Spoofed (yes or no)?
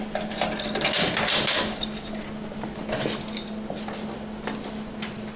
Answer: no